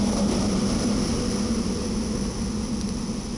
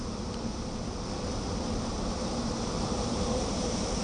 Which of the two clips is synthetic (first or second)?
second